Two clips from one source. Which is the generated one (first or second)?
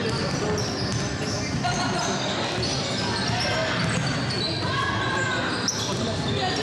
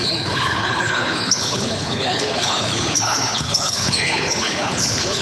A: second